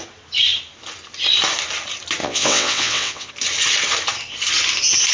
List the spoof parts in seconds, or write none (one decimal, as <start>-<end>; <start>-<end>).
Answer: 2.2-3.3